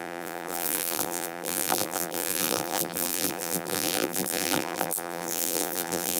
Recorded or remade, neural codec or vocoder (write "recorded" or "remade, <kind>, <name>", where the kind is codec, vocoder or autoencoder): remade, vocoder, BigVGAN v2